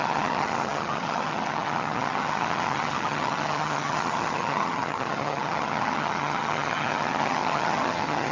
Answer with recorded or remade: remade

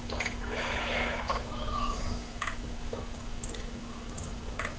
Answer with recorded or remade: remade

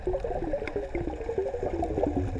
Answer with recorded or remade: recorded